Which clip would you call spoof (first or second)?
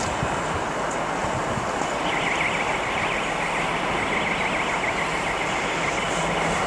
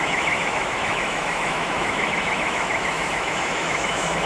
second